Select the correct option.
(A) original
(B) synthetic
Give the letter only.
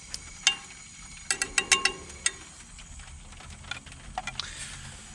A